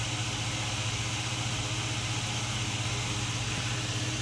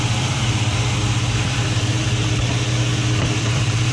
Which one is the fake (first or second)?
second